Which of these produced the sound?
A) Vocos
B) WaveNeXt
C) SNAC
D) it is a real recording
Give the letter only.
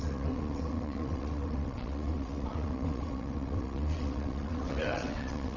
B